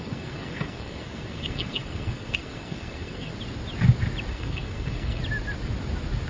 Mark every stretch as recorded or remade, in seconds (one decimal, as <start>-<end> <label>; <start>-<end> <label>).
0.0-3.3 remade; 3.3-4.3 recorded; 4.3-5.2 remade; 5.2-6.3 recorded